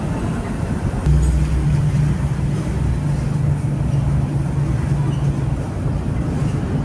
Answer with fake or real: real